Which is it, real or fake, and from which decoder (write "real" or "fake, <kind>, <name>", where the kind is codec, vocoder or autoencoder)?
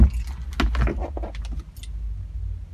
real